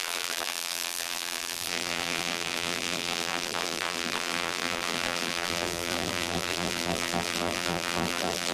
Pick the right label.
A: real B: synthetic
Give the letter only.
B